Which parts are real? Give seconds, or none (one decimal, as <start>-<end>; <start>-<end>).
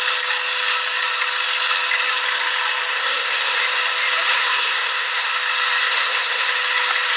0.0-2.9; 3.6-4.3; 5.3-5.8; 6.5-7.2